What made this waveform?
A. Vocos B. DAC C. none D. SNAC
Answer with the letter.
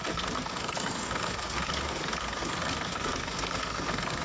D